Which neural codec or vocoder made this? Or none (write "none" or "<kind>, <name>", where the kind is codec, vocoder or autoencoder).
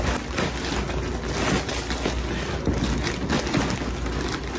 none